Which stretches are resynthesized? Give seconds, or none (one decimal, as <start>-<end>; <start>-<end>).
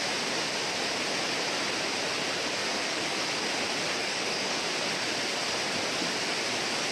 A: 2.6-3.2; 4.0-4.6